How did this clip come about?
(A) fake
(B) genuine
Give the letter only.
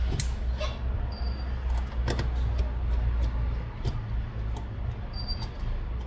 B